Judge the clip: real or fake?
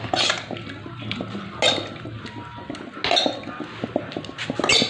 real